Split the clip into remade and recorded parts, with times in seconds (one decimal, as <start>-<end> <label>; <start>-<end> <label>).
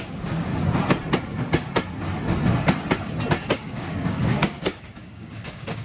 0.0-0.5 remade; 0.5-3.4 recorded; 3.4-5.8 remade